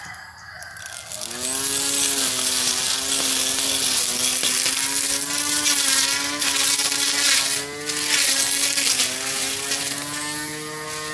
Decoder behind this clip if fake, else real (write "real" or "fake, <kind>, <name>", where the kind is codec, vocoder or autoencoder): real